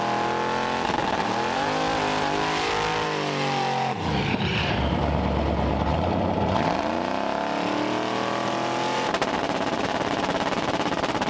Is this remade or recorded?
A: recorded